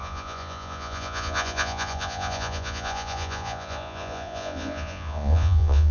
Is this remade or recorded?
remade